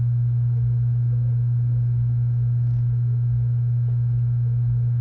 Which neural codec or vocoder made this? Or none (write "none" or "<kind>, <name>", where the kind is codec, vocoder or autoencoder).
none